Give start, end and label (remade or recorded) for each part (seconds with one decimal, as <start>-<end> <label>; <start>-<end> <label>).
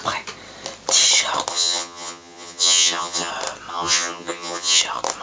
0.0-1.5 recorded; 1.5-3.3 remade; 3.3-3.7 recorded; 3.7-4.8 remade; 4.8-5.2 recorded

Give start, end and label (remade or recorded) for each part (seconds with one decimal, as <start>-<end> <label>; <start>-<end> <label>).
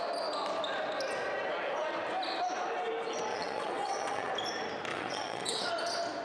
0.0-3.3 recorded; 3.3-4.3 remade; 4.3-4.9 recorded; 4.9-5.7 remade; 5.7-6.2 recorded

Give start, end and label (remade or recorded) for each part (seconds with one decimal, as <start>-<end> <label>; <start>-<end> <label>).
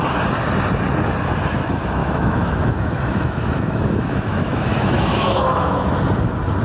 0.0-2.0 recorded; 2.0-5.9 remade; 5.9-6.6 recorded